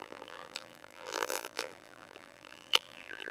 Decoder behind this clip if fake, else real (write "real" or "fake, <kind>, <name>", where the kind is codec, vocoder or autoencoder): fake, vocoder, BigVGAN v2